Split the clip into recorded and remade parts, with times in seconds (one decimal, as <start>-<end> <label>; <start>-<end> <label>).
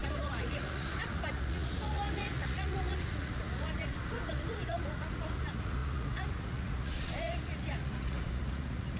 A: 0.0-9.0 remade